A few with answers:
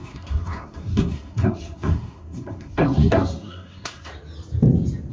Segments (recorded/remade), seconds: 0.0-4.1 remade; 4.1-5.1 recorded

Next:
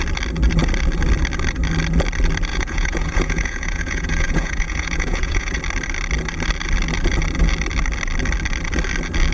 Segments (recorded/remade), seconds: 0.0-2.5 recorded; 2.5-5.6 remade; 5.6-9.3 recorded